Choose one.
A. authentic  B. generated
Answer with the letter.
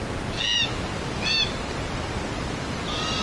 A